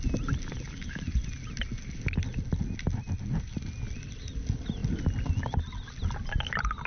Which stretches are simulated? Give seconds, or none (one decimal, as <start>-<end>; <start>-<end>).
none